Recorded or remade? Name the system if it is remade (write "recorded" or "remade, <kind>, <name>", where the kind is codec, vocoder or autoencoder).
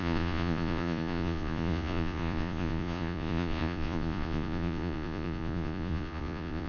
remade, vocoder, Vocos